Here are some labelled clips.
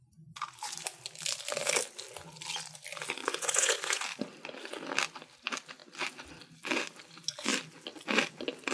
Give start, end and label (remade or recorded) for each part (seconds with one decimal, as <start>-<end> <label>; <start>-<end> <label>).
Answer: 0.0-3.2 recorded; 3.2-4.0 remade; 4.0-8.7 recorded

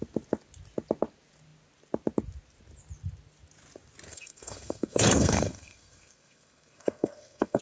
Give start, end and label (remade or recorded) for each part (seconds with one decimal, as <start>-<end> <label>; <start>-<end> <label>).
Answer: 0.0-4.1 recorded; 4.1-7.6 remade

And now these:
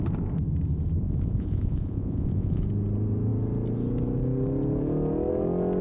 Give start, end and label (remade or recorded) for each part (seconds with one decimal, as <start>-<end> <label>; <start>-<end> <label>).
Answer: 0.0-1.0 recorded; 1.0-2.6 remade; 2.6-5.8 recorded

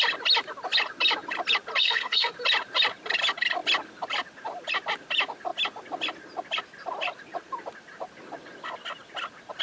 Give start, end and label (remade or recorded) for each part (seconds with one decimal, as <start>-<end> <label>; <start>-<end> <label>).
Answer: 0.0-1.8 recorded; 1.8-2.3 remade; 2.3-9.6 recorded